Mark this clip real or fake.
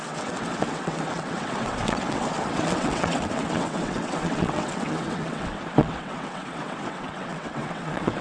fake